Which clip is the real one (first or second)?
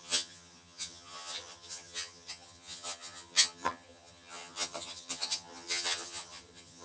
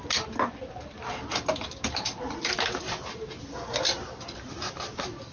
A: second